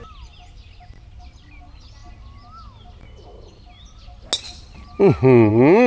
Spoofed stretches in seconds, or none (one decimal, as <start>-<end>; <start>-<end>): none